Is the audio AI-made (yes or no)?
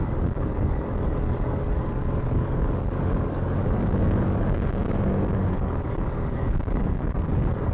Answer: yes